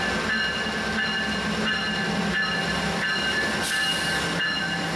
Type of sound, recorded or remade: recorded